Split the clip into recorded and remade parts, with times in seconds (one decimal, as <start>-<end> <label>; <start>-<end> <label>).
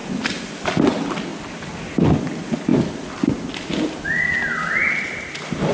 0.0-5.7 recorded